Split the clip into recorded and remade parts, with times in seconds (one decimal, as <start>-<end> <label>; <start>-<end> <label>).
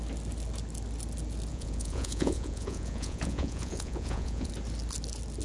0.0-1.5 recorded; 1.5-4.5 remade; 4.5-5.4 recorded